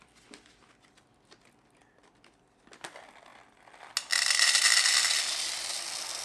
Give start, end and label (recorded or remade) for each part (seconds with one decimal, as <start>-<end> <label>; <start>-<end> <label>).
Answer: 0.0-6.2 recorded